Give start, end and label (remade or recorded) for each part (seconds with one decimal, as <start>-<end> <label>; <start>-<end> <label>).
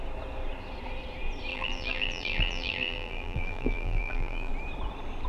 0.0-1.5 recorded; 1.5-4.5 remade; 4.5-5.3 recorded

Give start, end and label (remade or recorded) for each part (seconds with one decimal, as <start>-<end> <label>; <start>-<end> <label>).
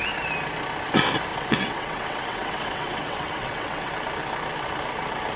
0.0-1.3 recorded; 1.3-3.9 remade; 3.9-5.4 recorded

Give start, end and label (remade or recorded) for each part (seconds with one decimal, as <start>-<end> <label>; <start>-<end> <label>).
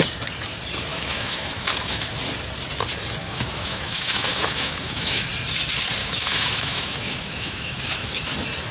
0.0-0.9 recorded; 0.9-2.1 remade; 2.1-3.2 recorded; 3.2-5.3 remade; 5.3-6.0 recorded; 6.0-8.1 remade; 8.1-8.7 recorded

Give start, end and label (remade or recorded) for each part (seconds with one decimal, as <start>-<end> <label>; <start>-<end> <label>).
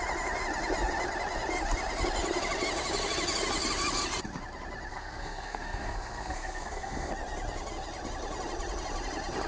0.0-4.9 recorded; 4.9-7.1 remade; 7.1-9.5 recorded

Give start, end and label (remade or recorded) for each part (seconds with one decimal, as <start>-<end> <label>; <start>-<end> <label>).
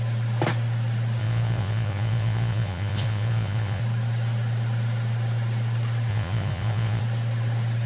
0.0-1.2 recorded; 1.2-3.8 remade; 3.8-6.1 recorded; 6.1-7.0 remade; 7.0-7.9 recorded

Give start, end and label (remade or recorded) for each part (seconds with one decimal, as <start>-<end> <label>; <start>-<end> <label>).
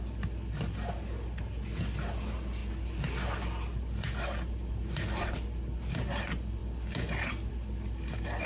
0.0-8.5 recorded